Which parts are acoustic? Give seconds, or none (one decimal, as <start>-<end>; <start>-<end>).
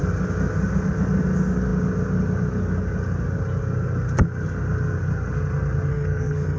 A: 0.0-5.9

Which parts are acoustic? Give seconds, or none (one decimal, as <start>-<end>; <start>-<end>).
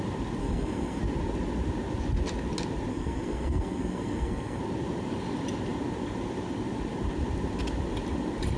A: 0.0-0.4; 1.0-2.9; 4.6-8.6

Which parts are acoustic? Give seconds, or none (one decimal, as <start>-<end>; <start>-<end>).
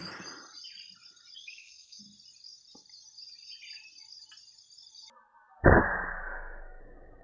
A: 0.0-1.4; 2.0-6.1; 6.8-7.2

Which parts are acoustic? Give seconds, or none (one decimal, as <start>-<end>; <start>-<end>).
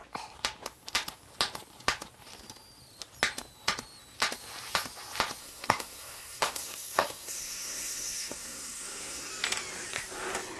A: 0.0-5.4; 9.3-10.6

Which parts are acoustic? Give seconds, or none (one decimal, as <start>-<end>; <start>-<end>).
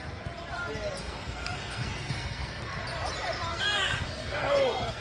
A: 0.0-1.0; 2.8-3.5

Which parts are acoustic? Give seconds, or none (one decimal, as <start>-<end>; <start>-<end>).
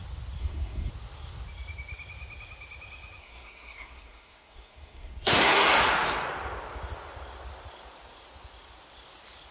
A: 0.0-0.4; 0.9-3.2; 5.8-9.5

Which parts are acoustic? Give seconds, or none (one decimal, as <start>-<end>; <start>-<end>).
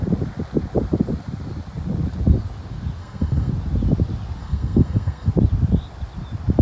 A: 0.0-3.0; 3.5-4.4; 5.3-6.6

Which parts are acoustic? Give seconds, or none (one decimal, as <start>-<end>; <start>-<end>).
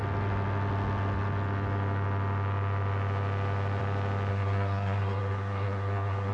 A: 0.0-4.3